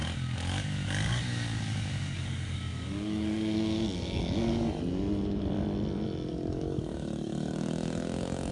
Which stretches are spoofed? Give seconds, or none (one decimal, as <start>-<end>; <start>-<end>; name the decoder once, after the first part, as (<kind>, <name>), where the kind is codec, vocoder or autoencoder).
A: 0.0-4.8 (codec, DAC); 6.3-8.5